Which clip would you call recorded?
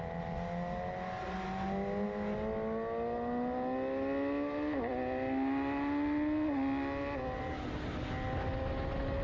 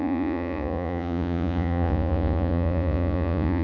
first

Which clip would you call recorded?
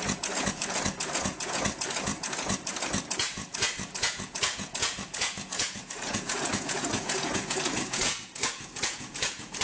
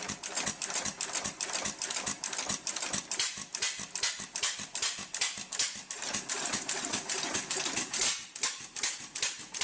second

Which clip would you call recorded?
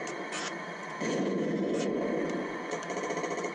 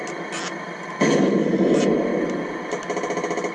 second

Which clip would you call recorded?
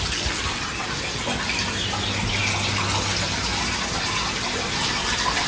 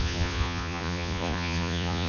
first